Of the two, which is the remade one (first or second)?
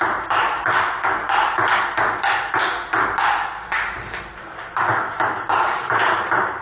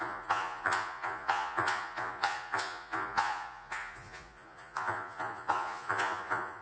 second